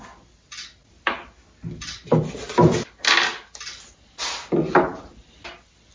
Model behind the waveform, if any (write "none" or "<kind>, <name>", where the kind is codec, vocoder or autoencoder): none